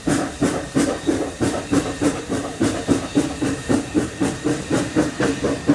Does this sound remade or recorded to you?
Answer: remade